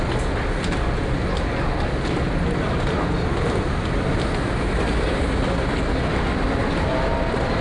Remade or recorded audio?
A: recorded